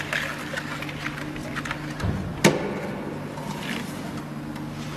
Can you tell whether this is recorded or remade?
recorded